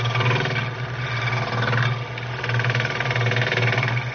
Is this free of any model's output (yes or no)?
yes